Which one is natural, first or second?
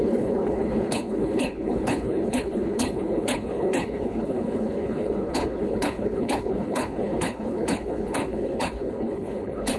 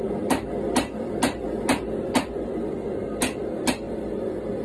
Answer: second